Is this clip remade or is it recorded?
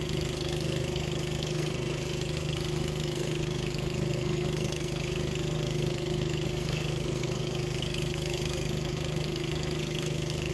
remade